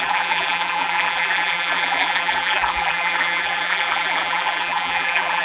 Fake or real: fake